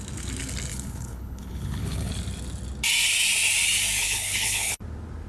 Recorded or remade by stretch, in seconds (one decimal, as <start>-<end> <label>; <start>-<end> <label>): 0.0-0.7 recorded; 0.7-2.1 remade; 2.1-4.0 recorded; 4.0-4.8 remade; 4.8-5.3 recorded